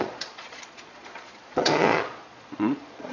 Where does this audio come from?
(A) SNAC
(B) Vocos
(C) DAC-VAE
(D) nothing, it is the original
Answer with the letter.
B